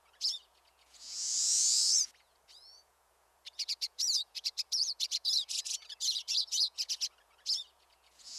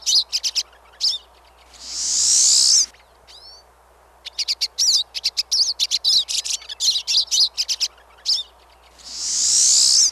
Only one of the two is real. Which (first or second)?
second